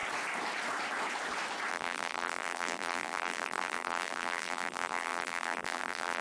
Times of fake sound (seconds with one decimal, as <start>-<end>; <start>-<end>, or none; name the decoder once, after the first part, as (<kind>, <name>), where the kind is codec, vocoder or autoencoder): 1.7-6.2 (vocoder, BigVGAN v2)